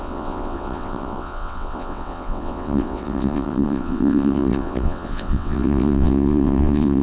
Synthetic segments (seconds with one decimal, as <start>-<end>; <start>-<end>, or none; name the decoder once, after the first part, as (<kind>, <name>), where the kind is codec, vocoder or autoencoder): 0.0-7.0 (vocoder, WaveNeXt)